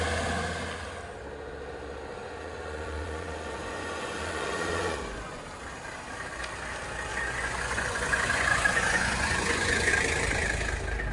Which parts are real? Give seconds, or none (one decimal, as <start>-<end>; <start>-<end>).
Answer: 0.0-2.2; 5.4-7.1; 9.9-11.1